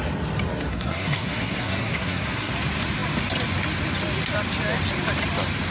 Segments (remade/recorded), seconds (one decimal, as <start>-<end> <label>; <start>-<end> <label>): 0.0-0.7 recorded; 0.7-2.5 remade; 2.5-5.7 recorded